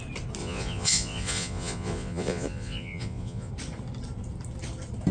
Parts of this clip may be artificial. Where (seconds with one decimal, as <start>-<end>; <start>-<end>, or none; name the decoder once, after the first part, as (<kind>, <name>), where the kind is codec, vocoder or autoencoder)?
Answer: 0.4-3.5 (vocoder, Vocos)